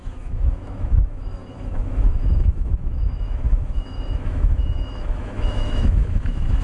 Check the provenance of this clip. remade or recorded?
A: remade